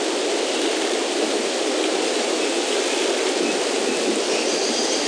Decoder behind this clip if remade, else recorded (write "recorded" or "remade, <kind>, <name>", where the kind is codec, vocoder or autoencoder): recorded